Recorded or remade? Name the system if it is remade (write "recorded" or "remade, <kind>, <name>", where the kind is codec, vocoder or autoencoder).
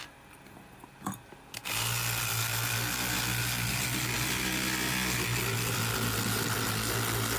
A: recorded